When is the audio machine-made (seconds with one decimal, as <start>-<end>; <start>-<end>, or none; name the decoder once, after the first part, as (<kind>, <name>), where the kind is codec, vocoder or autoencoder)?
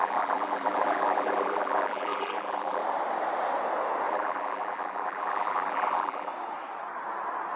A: 0.0-2.8 (vocoder, BigVGAN v2); 4.1-6.3